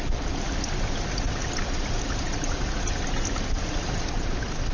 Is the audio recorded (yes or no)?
yes